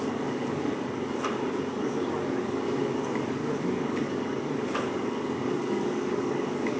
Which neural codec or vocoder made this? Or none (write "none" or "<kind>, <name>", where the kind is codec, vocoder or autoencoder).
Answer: codec, DAC